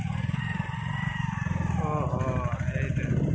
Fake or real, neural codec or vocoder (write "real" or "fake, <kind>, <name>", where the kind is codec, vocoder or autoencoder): real